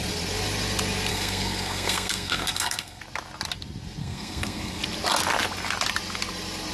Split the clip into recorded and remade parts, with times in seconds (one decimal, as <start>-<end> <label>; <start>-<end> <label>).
0.0-1.1 recorded; 1.1-3.0 remade; 3.0-4.0 recorded; 4.0-4.8 remade; 4.8-6.7 recorded